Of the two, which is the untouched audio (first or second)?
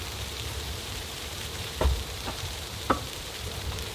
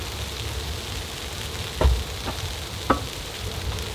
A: second